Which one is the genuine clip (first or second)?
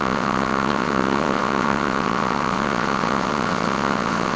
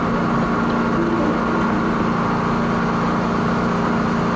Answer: second